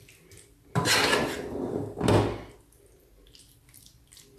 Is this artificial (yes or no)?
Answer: no